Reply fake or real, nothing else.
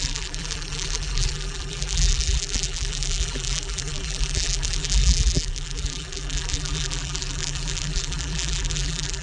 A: fake